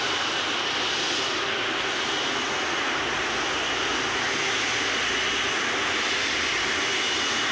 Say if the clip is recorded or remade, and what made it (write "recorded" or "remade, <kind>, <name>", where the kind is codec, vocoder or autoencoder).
recorded